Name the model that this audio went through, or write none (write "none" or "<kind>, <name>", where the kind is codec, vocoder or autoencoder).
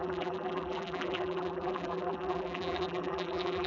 vocoder, BigVGAN v2